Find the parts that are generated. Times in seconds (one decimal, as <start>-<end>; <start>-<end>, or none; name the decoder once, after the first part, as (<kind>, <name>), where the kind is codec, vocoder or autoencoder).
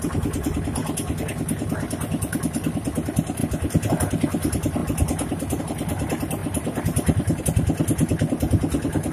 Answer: 6.4-7.4 (vocoder, BigVGAN v2)